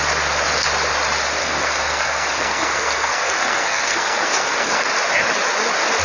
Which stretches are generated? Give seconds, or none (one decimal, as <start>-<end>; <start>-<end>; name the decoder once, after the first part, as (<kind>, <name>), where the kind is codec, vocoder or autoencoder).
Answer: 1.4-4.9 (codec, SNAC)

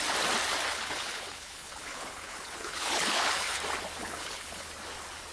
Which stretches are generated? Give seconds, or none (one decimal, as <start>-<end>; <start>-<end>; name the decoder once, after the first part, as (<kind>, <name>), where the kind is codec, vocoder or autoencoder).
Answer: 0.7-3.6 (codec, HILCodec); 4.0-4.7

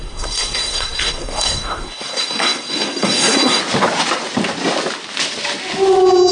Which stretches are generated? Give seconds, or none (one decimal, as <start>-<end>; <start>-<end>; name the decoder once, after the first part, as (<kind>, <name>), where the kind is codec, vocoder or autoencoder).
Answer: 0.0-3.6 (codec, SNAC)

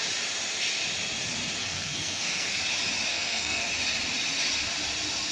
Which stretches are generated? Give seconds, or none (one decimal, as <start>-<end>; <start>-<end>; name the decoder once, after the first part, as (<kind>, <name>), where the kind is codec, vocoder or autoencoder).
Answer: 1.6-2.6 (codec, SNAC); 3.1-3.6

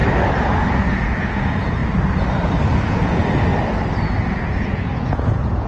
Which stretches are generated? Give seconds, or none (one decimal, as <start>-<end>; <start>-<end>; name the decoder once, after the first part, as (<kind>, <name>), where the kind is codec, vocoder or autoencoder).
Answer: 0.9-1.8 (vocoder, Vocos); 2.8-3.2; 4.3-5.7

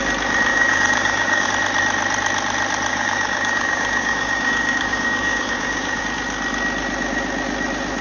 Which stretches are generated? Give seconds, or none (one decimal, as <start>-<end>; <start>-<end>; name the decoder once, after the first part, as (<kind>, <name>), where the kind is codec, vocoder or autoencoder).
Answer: 0.5-1.5 (codec, DAC); 2.9-6.0